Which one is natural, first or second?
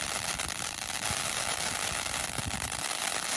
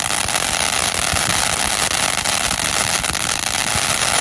second